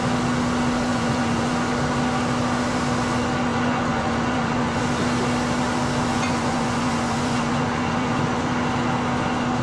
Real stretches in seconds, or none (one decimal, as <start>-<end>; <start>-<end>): 0.0-0.9; 1.7-3.5; 4.8-6.1; 8.5-9.6